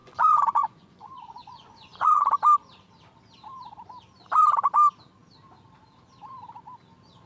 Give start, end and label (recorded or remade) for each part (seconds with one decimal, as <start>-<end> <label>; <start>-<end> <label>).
0.0-2.3 remade; 2.3-7.3 recorded

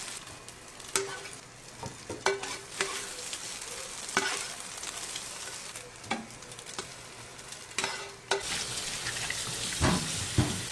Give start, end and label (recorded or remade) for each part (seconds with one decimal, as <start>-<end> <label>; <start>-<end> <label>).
0.0-10.7 recorded

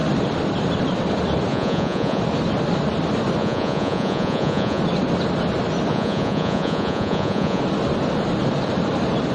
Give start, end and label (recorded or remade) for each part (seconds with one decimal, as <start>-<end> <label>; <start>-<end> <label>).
0.0-1.5 recorded; 1.5-2.2 remade; 2.2-3.4 recorded; 3.4-4.8 remade; 4.8-5.9 recorded; 5.9-7.6 remade; 7.6-9.3 recorded

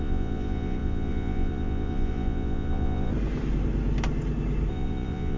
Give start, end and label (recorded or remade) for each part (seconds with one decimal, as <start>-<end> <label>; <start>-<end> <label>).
0.0-3.1 remade; 3.1-4.7 recorded; 4.7-5.4 remade